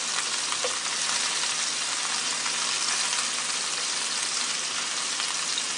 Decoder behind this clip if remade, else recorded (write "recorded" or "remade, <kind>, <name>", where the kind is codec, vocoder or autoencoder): recorded